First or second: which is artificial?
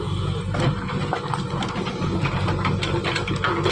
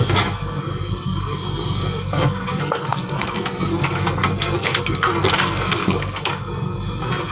second